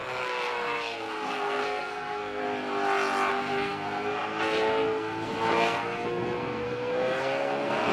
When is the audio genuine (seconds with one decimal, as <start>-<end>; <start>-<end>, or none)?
2.4-3.3